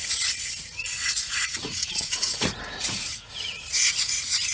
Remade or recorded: remade